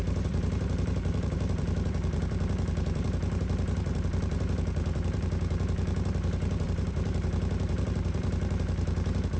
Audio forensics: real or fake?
fake